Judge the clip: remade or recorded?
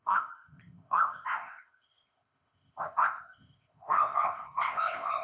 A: remade